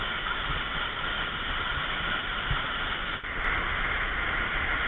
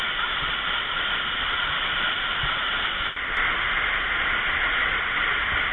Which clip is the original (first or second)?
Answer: first